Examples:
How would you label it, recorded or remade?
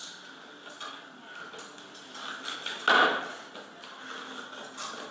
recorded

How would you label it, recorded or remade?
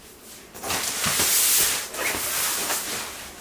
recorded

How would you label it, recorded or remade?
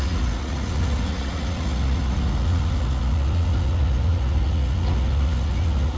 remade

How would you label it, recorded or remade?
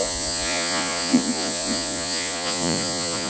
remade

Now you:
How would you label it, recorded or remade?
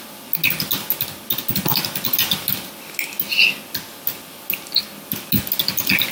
recorded